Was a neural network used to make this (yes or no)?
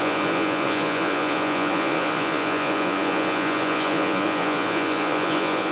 yes